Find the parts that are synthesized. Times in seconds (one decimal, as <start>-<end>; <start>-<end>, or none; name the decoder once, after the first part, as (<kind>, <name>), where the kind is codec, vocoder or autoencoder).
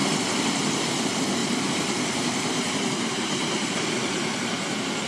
1.4-4.5 (vocoder, BigVGAN v2)